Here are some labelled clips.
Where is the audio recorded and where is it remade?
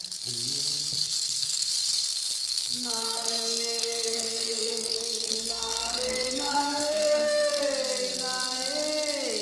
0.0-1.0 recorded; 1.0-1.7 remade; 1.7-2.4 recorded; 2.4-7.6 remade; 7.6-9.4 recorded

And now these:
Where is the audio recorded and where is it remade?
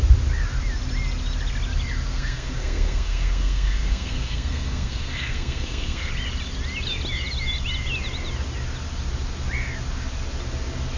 0.0-2.1 recorded; 2.1-6.1 remade; 6.1-11.0 recorded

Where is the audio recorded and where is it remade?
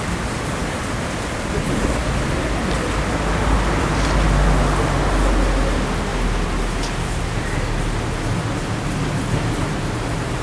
0.0-10.4 recorded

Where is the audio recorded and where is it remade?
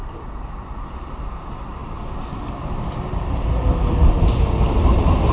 0.0-5.3 recorded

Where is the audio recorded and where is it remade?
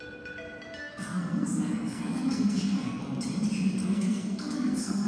0.0-0.8 recorded; 0.8-3.0 remade; 3.0-3.8 recorded; 3.8-5.1 remade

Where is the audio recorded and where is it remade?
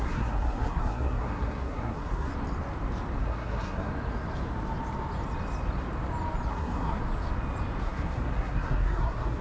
0.0-2.3 remade; 2.3-3.2 recorded; 3.2-3.9 remade; 3.9-6.5 recorded; 6.5-7.0 remade; 7.0-7.8 recorded; 7.8-9.4 remade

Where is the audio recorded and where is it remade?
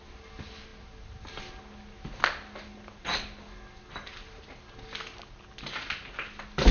0.0-6.7 recorded